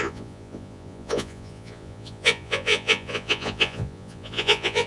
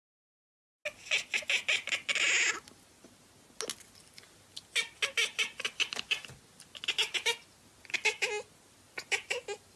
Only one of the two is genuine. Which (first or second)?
second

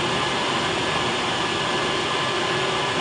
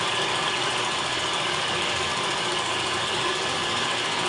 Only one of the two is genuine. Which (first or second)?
first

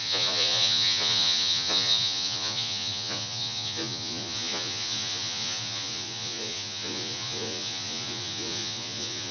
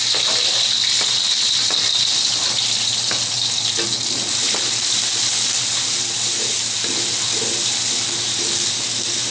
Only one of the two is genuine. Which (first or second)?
second